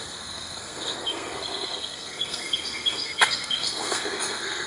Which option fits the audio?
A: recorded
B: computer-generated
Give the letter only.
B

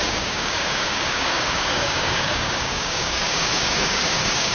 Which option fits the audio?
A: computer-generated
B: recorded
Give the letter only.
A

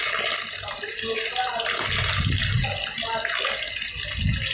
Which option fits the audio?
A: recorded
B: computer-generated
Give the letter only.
A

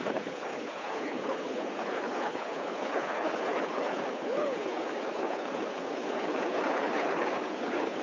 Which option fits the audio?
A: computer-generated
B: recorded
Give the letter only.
A